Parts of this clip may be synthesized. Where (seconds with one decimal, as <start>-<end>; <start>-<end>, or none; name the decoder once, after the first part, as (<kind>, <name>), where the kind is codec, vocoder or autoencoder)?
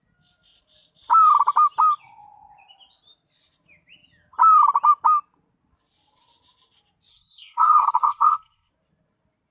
7.1-8.7 (codec, SNAC)